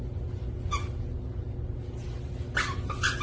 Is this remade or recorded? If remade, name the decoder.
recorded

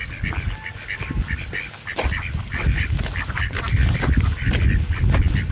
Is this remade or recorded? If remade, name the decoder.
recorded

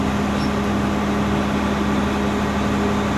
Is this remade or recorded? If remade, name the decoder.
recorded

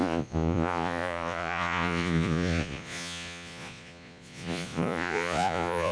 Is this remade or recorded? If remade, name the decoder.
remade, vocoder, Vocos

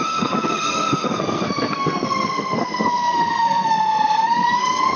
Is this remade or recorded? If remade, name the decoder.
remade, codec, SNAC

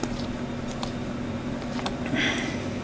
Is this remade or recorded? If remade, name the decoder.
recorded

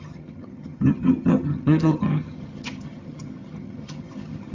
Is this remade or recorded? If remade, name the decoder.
remade, vocoder, HiFi-GAN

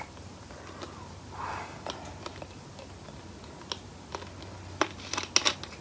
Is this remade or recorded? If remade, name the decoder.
recorded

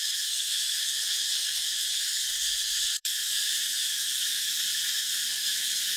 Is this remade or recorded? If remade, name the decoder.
remade, codec, SNAC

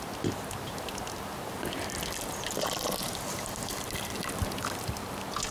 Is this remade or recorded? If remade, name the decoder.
recorded